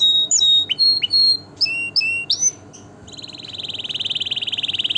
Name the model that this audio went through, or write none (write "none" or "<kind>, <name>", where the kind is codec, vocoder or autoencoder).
none